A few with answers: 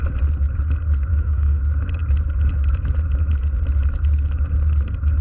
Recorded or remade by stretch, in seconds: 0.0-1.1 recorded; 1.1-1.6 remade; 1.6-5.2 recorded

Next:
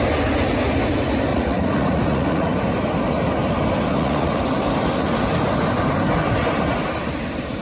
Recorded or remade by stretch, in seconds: 0.0-1.3 recorded; 1.3-2.5 remade; 2.5-3.9 recorded; 3.9-4.4 remade; 4.4-7.6 recorded

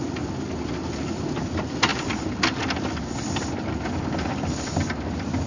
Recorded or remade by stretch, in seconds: 0.0-5.5 recorded

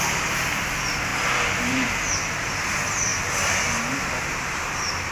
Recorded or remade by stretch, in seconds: 0.0-1.1 remade; 1.1-2.6 recorded; 2.6-3.1 remade; 3.1-3.9 recorded; 3.9-5.1 remade

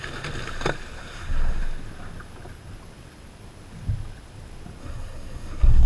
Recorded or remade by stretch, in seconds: 0.0-1.0 recorded; 1.0-1.6 remade; 1.6-4.8 recorded; 4.8-5.9 remade

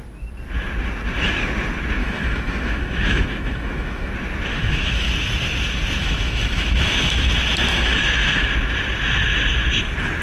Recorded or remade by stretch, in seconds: 0.0-2.0 recorded; 2.0-4.1 remade; 4.1-4.5 recorded; 4.5-5.1 remade; 5.1-6.0 recorded; 6.0-7.3 remade; 7.3-7.7 recorded; 7.7-8.5 remade; 8.5-10.2 recorded

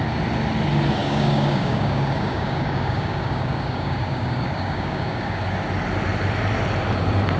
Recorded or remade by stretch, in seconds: 0.0-1.0 recorded; 1.0-5.4 remade; 5.4-7.4 recorded